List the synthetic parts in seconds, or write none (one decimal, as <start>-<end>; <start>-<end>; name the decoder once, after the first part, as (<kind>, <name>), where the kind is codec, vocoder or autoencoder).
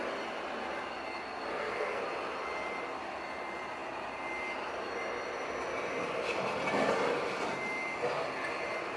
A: 1.5-2.0 (codec, SNAC)